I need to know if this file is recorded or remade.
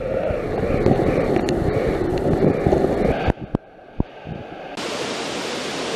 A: recorded